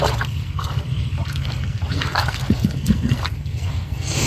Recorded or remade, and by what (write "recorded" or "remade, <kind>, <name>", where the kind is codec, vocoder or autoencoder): remade, codec, SNAC